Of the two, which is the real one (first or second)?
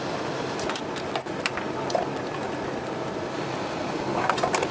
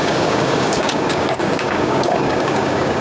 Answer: first